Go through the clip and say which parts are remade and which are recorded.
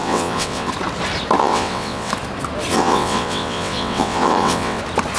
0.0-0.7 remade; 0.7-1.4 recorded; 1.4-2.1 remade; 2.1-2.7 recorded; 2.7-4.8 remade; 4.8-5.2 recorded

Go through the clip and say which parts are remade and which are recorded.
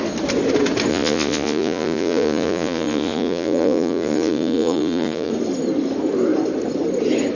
0.0-0.9 recorded; 0.9-5.3 remade; 5.3-7.4 recorded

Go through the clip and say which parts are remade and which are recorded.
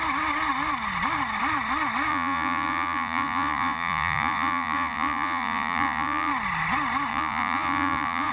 0.0-2.1 recorded; 2.1-6.3 remade; 6.3-7.1 recorded; 7.1-8.3 remade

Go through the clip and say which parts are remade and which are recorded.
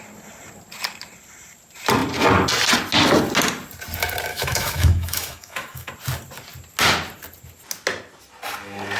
0.0-4.3 recorded; 4.3-5.9 remade; 5.9-9.0 recorded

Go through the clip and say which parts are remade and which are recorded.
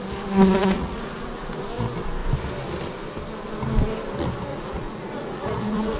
0.0-0.6 recorded; 0.6-1.6 remade; 1.6-4.5 recorded; 4.5-6.0 remade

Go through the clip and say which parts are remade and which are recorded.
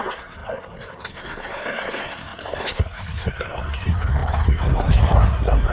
0.0-5.7 remade